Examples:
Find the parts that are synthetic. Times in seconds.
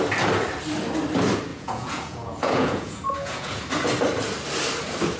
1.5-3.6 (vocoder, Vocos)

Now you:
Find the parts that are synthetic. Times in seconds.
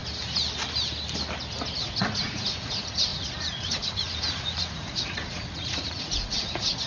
1.8-6.9 (vocoder, Vocos)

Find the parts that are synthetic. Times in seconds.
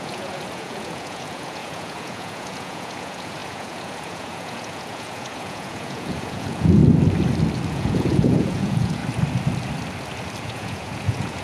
0.0-6.8 (vocoder, Vocos); 7.7-9.0; 10.4-11.4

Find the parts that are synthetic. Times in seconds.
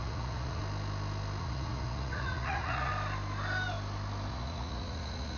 0.0-0.6 (vocoder, Vocos); 1.4-2.9; 4.3-5.4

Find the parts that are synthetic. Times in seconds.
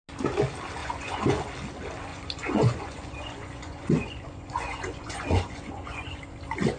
0.8-1.4 (vocoder, Vocos); 2.1-6.2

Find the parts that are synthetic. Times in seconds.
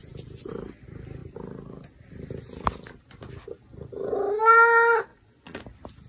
5.1-5.6 (vocoder, Vocos)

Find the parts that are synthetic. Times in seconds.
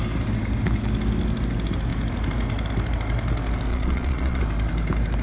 3.7-4.4 (vocoder, Vocos)